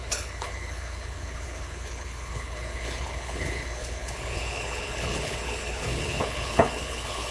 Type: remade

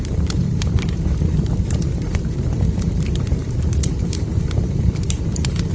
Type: remade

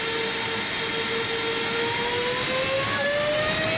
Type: recorded